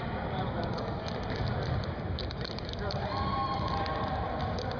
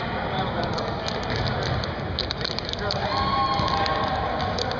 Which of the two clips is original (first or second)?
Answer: second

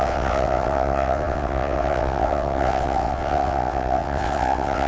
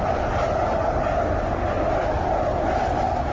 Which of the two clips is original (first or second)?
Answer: second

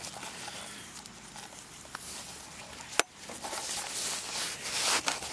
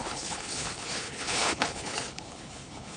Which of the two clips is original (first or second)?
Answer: first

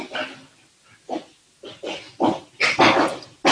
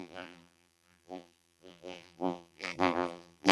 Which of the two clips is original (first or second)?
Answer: first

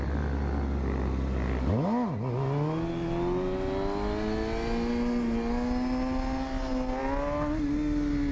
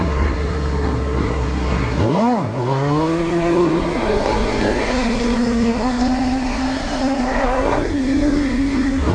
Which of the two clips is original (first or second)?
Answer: first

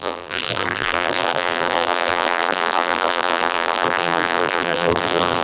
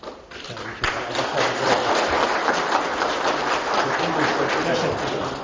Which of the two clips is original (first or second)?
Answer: second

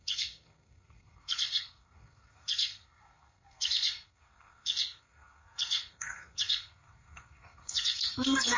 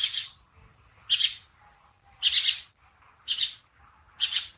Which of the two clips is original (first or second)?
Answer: second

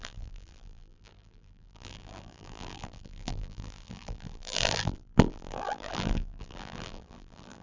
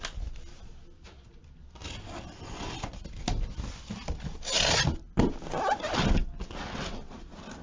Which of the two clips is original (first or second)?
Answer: second